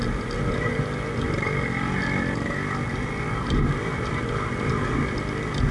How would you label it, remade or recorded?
recorded